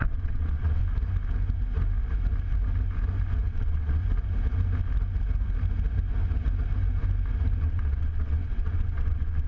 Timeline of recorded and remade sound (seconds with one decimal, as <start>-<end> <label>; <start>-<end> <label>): 0.0-0.8 remade; 0.8-3.5 recorded; 3.5-4.0 remade; 4.0-7.6 recorded; 7.6-9.5 remade